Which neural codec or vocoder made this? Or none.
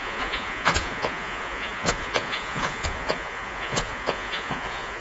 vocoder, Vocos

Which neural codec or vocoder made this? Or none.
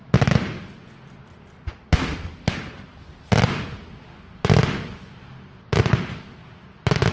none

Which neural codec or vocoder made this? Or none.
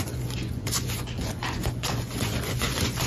vocoder, Vocos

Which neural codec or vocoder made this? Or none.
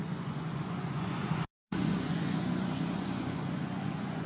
vocoder, Vocos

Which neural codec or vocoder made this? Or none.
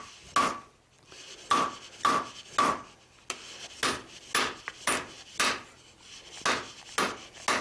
none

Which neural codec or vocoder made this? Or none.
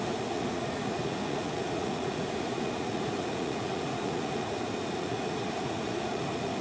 vocoder, Vocos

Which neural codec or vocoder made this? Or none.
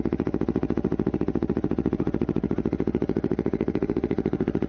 vocoder, Vocos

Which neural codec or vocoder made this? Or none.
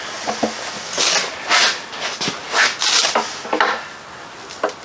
none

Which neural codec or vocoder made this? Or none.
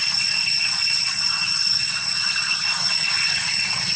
vocoder, Vocos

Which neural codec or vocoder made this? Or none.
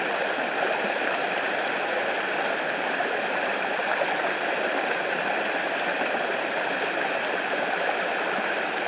none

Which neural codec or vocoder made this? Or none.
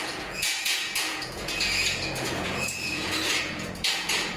vocoder, Vocos